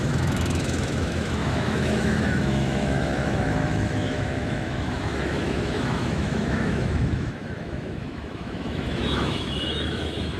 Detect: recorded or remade remade